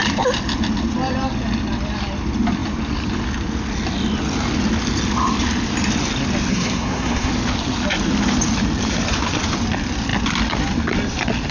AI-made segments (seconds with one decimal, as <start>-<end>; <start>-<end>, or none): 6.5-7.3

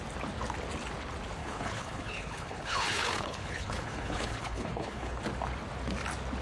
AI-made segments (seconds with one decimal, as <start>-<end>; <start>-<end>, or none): 1.4-5.2

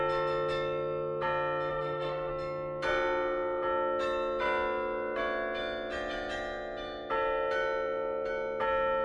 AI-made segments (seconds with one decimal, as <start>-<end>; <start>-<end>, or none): 1.7-2.3